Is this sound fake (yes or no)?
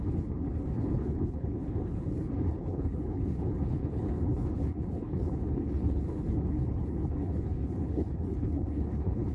yes